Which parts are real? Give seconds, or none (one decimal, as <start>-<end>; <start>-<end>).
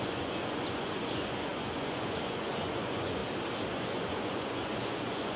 3.2-3.7